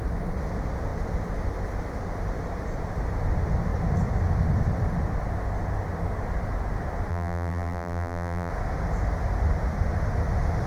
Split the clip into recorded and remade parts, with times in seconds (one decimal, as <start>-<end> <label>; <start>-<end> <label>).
0.0-7.1 recorded; 7.1-8.5 remade; 8.5-10.7 recorded